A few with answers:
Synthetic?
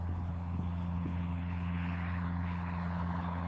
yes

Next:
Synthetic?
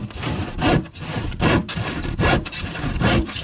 yes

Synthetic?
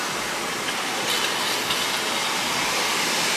no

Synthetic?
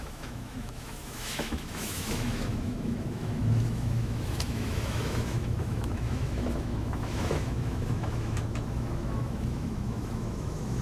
yes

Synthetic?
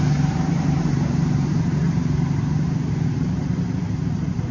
yes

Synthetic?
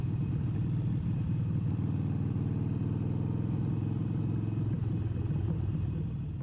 no